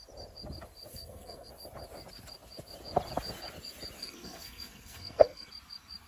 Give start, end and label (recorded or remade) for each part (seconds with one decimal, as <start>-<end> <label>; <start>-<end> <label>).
0.0-0.9 recorded; 0.9-1.5 remade; 1.5-4.0 recorded; 4.0-5.5 remade; 5.5-6.1 recorded